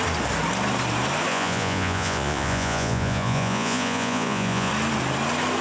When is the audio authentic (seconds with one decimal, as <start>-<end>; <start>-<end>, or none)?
0.0-1.3; 4.7-5.6